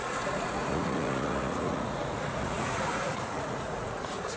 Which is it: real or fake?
fake